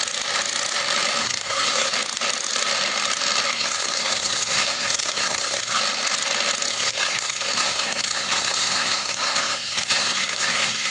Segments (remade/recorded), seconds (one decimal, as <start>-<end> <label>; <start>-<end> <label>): 0.0-1.2 recorded; 1.2-1.9 remade; 1.9-3.5 recorded; 3.5-5.8 remade; 5.8-6.7 recorded; 6.7-10.9 remade